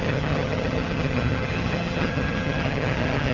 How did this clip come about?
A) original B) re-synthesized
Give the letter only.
B